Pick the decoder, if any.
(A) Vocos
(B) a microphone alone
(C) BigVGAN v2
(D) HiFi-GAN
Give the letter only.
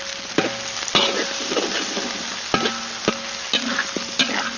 B